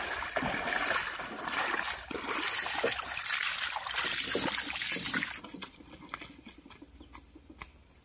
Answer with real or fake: real